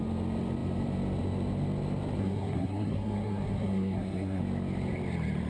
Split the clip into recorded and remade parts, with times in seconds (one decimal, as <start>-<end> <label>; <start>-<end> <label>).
0.0-2.2 recorded; 2.2-4.4 remade; 4.4-5.5 recorded